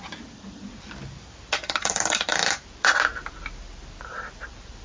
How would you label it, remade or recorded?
remade